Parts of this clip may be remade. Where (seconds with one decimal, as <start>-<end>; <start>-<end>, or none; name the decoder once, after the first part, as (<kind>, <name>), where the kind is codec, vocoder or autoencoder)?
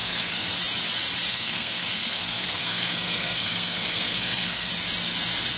0.0-0.5 (codec, SNAC); 1.3-4.7